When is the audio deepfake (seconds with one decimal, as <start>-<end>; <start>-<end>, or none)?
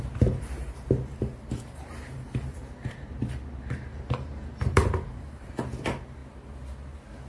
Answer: 0.0-6.2